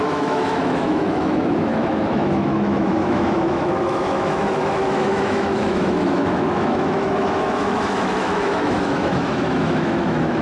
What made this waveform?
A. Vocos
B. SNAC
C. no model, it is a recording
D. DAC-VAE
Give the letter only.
D